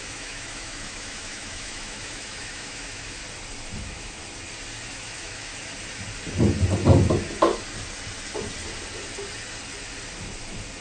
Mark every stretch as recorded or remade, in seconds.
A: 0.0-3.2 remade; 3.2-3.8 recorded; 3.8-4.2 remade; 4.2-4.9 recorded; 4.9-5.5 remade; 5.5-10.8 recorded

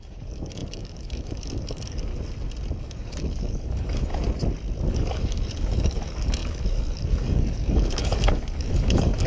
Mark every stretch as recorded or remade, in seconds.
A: 0.0-2.1 remade; 2.1-2.8 recorded; 2.8-4.1 remade; 4.1-4.9 recorded; 4.9-9.3 remade

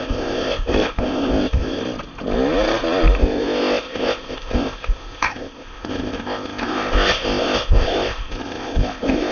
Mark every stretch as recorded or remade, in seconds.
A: 0.0-1.8 remade; 1.8-3.2 recorded; 3.2-9.3 remade